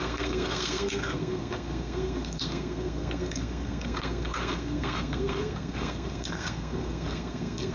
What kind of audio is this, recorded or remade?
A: remade